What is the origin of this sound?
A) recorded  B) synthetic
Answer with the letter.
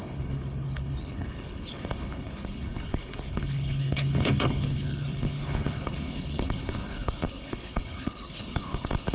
B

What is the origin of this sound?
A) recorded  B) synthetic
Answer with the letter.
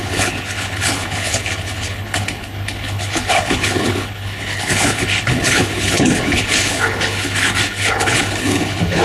B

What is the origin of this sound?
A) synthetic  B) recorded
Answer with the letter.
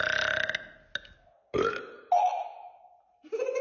B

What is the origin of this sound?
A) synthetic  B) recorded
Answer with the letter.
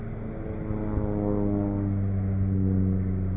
B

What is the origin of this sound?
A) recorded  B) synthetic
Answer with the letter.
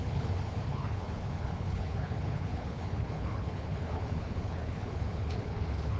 B